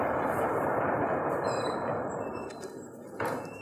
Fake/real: fake